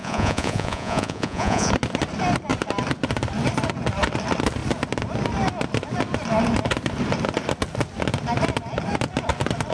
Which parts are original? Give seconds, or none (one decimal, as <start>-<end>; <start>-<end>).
1.7-9.7